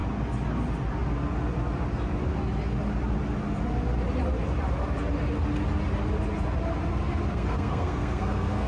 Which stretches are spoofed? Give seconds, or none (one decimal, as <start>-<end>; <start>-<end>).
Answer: 7.3-8.7